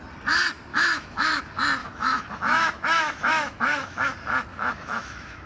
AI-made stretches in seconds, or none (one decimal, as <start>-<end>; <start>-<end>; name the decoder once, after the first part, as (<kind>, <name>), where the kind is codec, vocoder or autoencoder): 0.7-1.4 (autoencoder, DAC-VAE); 1.8-4.0; 4.5-5.5